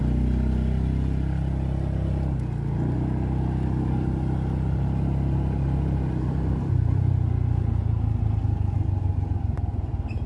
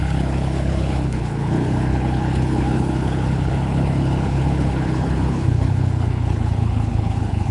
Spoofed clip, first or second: second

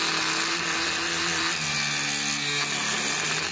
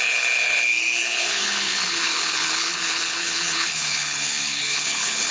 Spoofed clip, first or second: second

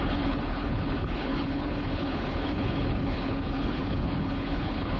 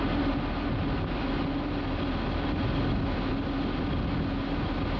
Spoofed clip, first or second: first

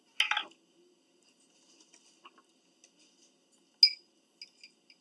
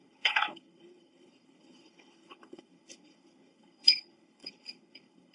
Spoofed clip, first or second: second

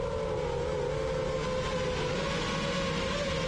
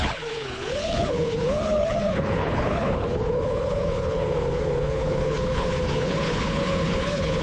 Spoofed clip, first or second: second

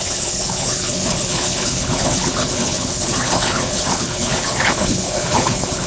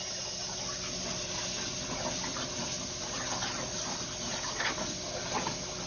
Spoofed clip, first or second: first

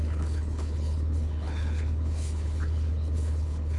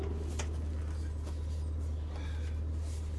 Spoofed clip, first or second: first